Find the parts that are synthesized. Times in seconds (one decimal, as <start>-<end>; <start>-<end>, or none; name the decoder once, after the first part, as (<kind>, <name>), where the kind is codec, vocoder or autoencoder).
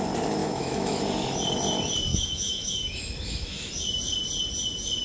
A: 0.4-1.0 (autoencoder, DAC-VAE); 2.1-3.7